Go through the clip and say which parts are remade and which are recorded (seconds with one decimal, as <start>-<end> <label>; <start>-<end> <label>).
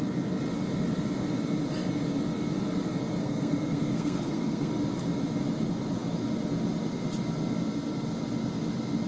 0.0-3.2 recorded; 3.2-4.7 remade; 4.7-9.1 recorded